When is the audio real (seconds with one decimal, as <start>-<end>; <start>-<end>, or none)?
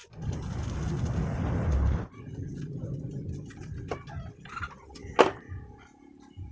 0.0-6.5